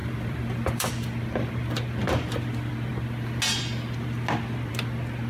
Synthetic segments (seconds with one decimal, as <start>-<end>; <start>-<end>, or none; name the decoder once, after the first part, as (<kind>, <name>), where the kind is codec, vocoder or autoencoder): 0.0-0.9 (vocoder, BigVGAN v2)